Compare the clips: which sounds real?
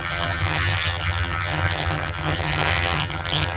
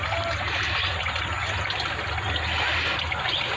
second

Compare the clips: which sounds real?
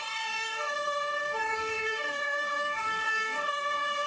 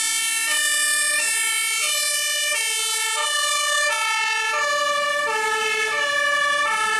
second